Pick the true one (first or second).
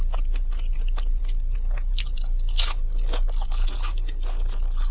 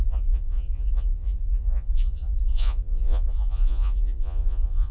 first